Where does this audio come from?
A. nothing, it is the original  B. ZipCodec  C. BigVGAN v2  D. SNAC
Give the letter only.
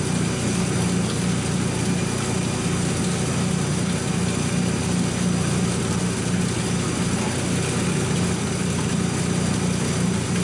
A